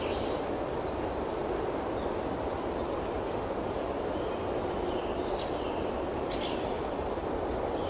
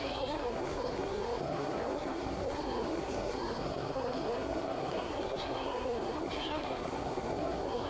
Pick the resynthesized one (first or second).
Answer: second